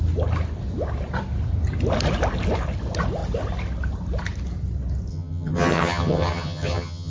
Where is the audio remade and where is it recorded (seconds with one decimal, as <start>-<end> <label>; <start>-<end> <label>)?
0.0-5.1 recorded; 5.1-7.1 remade

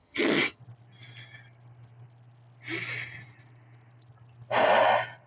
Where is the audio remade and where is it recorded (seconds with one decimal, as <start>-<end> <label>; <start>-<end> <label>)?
0.0-0.6 remade; 0.6-5.3 recorded

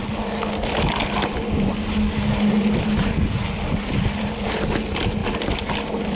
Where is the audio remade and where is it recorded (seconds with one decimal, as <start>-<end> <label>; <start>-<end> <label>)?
0.0-6.1 recorded

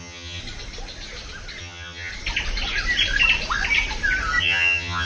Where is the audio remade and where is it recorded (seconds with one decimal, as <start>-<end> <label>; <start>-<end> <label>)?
0.0-0.4 remade; 0.4-1.6 recorded; 1.6-2.1 remade; 2.1-4.4 recorded; 4.4-5.0 remade